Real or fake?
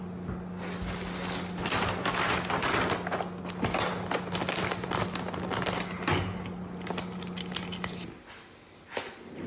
real